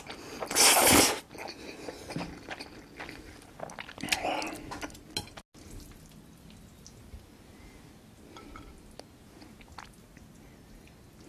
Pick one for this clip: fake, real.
real